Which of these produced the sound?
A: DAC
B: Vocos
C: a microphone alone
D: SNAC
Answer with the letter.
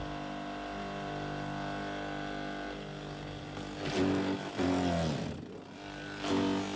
C